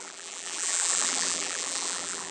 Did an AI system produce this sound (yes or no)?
yes